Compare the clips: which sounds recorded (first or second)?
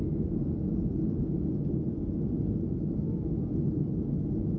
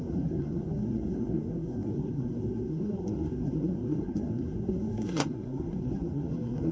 first